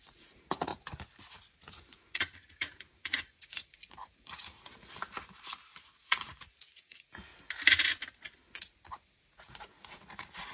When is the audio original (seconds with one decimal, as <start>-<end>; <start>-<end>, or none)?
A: 0.7-1.6; 4.7-5.8; 7.3-8.6